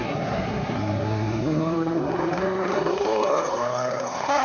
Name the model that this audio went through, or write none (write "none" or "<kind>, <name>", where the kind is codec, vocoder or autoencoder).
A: codec, SNAC